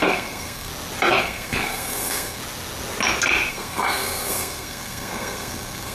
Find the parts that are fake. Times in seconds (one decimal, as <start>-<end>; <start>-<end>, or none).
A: 0.0-0.7; 1.2-2.4; 3.5-5.9

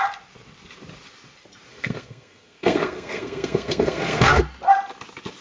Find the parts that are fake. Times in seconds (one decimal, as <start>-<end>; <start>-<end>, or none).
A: 1.7-4.4

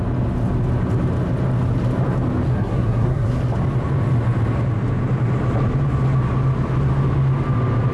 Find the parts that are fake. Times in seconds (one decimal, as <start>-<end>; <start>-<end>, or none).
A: 2.5-3.4